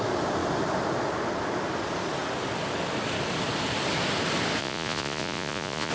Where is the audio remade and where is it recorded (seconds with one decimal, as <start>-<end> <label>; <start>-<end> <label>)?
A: 0.0-4.6 recorded; 4.6-5.9 remade